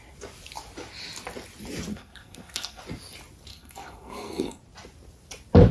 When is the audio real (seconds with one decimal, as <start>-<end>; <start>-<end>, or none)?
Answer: 0.0-1.9; 2.8-3.5; 4.6-5.7